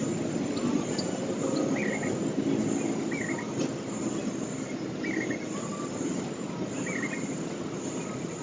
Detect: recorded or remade recorded